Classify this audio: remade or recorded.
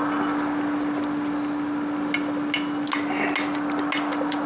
recorded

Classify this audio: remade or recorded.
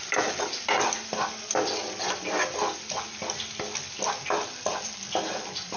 recorded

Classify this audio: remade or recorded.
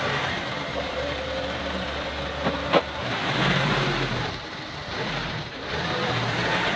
remade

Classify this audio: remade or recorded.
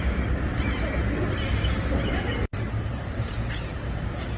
remade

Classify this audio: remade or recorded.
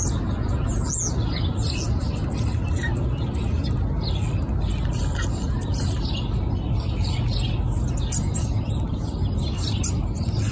recorded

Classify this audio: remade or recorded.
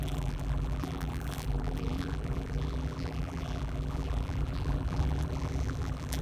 remade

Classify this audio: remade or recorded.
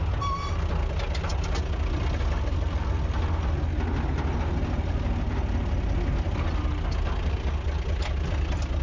recorded